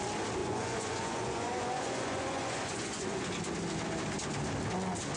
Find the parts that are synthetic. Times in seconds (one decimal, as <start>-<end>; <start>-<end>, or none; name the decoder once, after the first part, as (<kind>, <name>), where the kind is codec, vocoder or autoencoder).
0.4-3.2 (vocoder, Vocos)